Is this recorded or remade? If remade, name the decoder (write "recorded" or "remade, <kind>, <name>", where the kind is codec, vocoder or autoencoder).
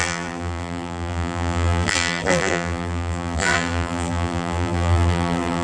remade, vocoder, BigVGAN v2